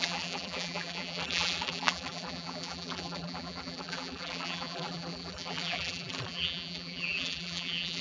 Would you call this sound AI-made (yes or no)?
yes